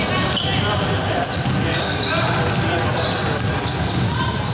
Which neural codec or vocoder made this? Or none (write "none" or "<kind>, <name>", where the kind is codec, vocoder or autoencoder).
none